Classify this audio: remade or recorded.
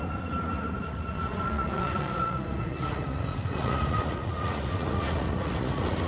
remade